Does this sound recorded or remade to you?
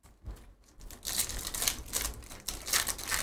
recorded